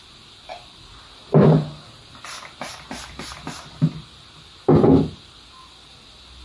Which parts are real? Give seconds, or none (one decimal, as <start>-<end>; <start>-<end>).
0.0-0.5; 4.3-6.4